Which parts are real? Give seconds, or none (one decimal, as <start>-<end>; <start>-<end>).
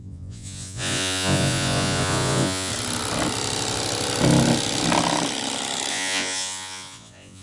2.7-5.9